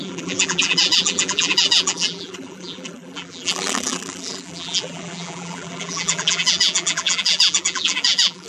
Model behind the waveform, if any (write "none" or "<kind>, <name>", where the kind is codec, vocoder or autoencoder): vocoder, BigVGAN v2